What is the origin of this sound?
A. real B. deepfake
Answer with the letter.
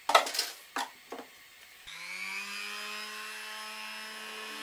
A